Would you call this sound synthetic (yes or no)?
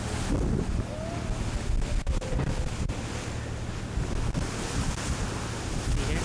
no